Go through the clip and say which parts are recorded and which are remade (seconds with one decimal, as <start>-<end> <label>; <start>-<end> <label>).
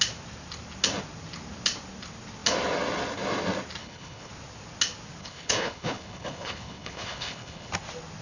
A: 0.0-3.8 recorded; 3.8-4.3 remade; 4.3-5.2 recorded; 5.2-7.7 remade; 7.7-8.2 recorded